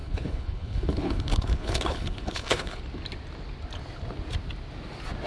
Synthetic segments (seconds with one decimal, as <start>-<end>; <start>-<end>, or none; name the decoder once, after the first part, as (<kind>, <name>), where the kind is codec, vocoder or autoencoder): 0.0-2.8 (codec, HILCodec)